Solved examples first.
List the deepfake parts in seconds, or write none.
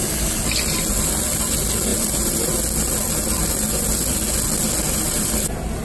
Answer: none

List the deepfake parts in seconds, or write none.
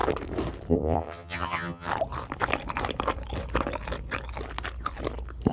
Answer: 0.7-1.9 (vocoder, HiFi-GAN)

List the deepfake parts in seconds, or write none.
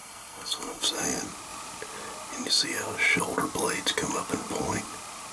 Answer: 0.0-0.8 (codec, SNAC)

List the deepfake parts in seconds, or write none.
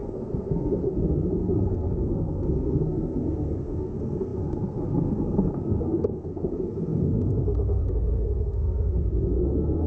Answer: 0.0-9.9 (codec, SNAC)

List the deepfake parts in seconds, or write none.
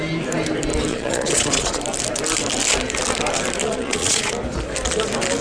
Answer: 0.9-1.8 (vocoder, Vocos); 3.6-4.3